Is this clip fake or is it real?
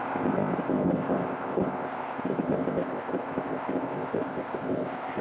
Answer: fake